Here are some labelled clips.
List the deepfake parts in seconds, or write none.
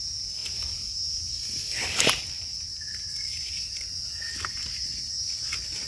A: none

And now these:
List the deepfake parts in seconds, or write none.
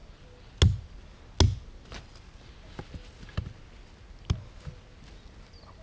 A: none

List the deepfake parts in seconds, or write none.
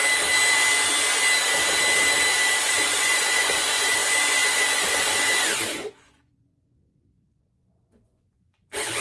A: 2.6-9.0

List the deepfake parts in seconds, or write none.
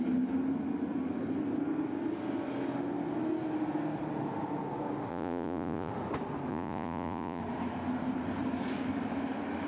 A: 5.1-5.9; 6.5-7.4